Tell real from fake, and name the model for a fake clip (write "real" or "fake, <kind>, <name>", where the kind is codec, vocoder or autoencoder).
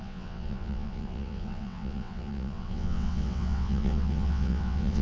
fake, vocoder, WaveNeXt